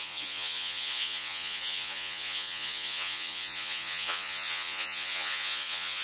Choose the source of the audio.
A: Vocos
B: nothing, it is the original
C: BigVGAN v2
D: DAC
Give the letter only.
A